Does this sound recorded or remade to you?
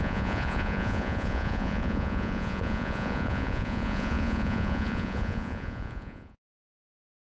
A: remade